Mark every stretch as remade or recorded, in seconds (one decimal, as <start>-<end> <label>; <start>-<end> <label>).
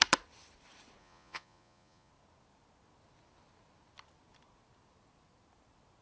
0.0-1.0 recorded; 1.0-2.1 remade; 2.1-6.0 recorded